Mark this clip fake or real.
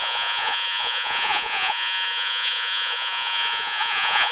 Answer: fake